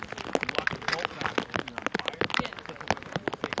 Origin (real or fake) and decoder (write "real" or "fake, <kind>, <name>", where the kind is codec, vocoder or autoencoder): real